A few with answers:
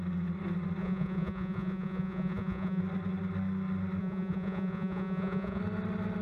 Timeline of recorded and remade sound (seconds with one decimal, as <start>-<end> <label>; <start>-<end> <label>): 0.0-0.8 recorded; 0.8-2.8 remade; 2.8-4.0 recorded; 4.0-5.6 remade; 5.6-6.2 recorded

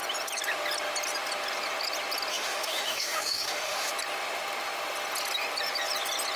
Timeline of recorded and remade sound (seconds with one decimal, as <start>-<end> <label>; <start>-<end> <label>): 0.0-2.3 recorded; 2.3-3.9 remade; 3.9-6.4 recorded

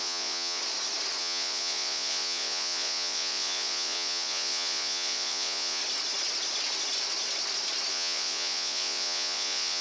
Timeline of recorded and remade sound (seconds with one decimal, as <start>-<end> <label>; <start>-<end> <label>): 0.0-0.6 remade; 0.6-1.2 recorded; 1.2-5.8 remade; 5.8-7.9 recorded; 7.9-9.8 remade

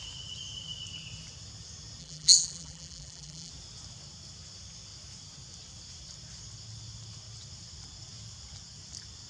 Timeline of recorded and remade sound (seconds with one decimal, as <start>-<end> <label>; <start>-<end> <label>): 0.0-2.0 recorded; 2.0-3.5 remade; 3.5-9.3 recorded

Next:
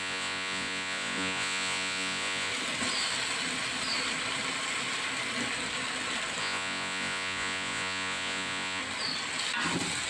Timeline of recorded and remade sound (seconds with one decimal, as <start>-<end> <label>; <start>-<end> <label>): 0.0-2.5 remade; 2.5-6.4 recorded; 6.4-8.8 remade; 8.8-10.1 recorded

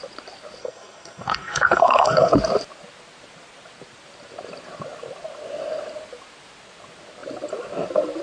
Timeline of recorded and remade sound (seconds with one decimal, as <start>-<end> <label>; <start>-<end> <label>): 0.0-0.6 recorded; 0.6-2.3 remade; 2.3-8.2 recorded

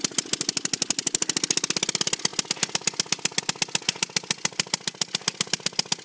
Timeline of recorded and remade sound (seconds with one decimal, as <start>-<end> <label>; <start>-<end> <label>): 0.0-6.0 recorded